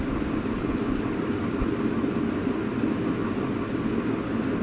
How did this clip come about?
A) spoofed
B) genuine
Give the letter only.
B